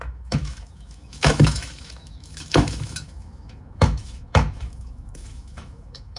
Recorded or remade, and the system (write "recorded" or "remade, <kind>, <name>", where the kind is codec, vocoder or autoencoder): remade, autoencoder, DAC-VAE